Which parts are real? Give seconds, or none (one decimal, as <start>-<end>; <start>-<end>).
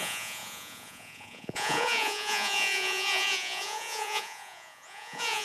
none